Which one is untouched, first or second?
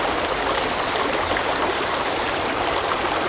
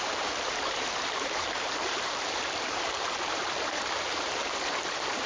first